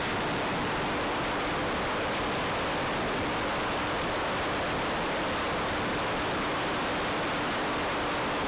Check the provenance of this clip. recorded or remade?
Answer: recorded